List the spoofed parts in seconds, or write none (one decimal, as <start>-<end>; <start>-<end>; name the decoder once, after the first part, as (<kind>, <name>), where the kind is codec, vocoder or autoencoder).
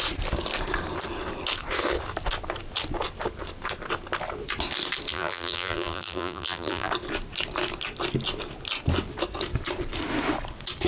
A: 5.1-6.9 (vocoder, BigVGAN v2)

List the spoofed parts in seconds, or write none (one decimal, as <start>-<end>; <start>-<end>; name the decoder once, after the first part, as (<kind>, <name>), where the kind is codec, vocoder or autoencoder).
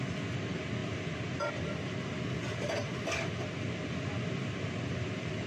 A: 0.8-1.5 (vocoder, BigVGAN v2); 2.8-5.5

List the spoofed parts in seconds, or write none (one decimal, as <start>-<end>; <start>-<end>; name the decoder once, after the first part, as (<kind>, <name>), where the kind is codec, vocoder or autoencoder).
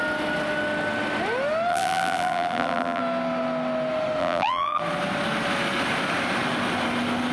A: 1.7-3.0 (vocoder, BigVGAN v2); 4.2-4.8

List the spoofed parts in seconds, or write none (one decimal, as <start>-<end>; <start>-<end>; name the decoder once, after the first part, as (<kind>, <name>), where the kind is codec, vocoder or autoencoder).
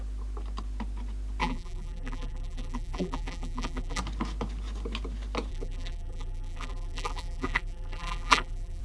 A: 1.4-4.0 (vocoder, BigVGAN v2); 5.5-8.8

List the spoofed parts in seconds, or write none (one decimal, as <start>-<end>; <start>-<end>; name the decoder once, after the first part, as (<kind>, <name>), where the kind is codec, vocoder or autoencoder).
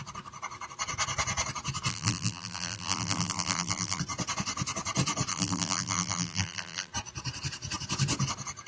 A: 1.9-4.0 (vocoder, BigVGAN v2); 5.3-6.9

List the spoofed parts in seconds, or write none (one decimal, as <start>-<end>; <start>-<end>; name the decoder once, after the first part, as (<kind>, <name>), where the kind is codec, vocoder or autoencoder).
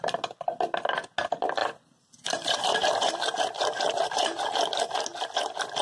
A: 1.6-4.5 (vocoder, BigVGAN v2)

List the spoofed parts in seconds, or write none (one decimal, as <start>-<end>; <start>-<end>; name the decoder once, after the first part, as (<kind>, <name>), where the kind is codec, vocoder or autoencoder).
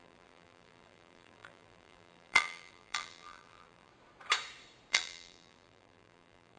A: 0.0-3.9 (vocoder, BigVGAN v2); 4.9-6.6